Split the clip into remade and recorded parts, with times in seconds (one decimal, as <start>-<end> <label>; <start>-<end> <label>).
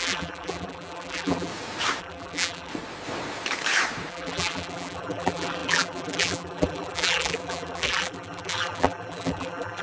0.0-1.5 remade; 1.5-2.0 recorded; 2.0-2.7 remade; 2.7-4.1 recorded; 4.1-9.8 remade